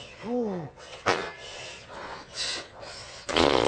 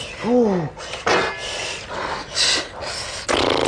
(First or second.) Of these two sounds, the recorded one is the second